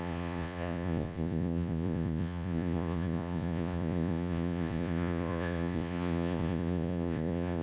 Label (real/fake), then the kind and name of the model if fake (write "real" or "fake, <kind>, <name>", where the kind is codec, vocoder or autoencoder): fake, vocoder, Vocos